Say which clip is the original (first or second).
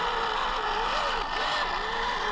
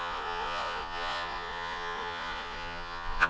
first